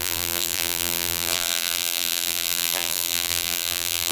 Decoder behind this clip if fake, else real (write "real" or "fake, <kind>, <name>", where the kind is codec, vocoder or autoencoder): fake, vocoder, BigVGAN v2